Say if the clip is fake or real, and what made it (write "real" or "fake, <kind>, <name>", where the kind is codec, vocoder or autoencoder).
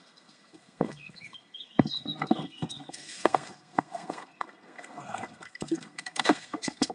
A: fake, codec, SNAC